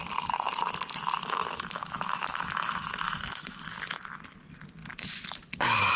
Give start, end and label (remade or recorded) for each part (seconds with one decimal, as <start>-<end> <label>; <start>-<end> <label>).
0.0-1.2 recorded; 1.2-3.6 remade; 3.6-6.0 recorded